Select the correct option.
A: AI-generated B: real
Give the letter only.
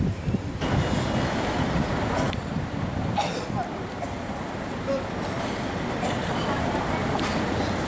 B